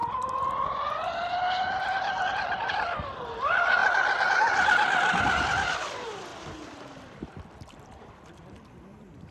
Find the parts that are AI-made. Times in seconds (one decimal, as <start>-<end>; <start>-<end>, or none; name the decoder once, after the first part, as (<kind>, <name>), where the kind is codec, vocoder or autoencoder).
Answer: 3.8-5.2 (vocoder, BigVGAN v2); 6.3-9.3